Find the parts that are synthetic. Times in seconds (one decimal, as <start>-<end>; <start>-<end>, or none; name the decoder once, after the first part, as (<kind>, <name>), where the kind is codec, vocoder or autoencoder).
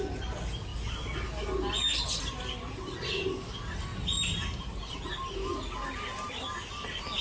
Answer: none